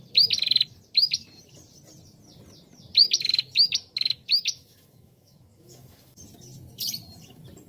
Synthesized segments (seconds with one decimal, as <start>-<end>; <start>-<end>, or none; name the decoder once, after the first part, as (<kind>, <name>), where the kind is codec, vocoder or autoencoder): 3.0-6.2 (autoencoder, DAC-VAE)